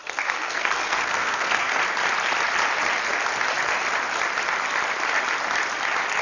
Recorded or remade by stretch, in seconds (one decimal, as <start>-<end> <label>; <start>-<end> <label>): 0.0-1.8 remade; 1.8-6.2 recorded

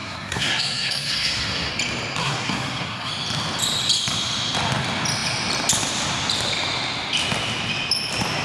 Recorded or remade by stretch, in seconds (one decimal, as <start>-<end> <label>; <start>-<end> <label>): 0.0-1.7 remade; 1.7-2.2 recorded; 2.2-3.1 remade; 3.1-8.4 recorded

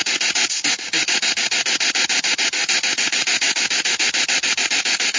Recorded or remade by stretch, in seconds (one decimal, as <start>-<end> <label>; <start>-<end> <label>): 0.0-5.2 recorded

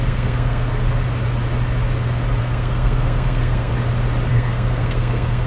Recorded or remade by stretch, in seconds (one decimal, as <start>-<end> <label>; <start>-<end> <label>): 0.0-0.8 remade; 0.8-2.4 recorded; 2.4-3.7 remade; 3.7-4.3 recorded; 4.3-5.5 remade

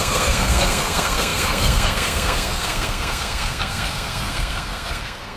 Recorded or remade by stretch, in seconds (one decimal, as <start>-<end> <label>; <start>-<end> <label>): 0.0-5.4 remade

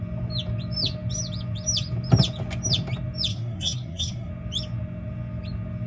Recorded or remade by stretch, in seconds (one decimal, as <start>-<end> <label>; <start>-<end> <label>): 0.0-3.3 recorded; 3.3-4.3 remade; 4.3-5.9 recorded

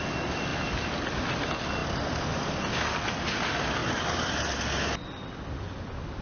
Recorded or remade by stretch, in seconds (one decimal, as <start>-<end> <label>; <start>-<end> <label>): 0.0-6.2 recorded